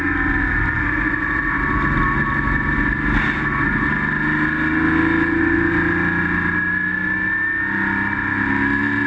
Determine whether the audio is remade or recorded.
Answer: recorded